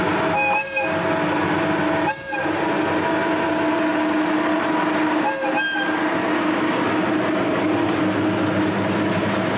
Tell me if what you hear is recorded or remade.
recorded